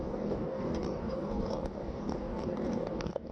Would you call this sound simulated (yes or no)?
yes